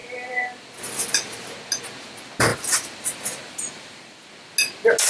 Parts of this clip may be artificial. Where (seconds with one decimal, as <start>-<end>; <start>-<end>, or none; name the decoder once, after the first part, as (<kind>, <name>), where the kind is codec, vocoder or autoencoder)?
0.0-0.8 (vocoder, BigVGAN v2); 2.5-4.3